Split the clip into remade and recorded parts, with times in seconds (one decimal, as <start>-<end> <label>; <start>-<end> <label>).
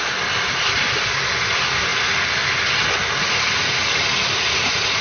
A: 0.0-5.0 recorded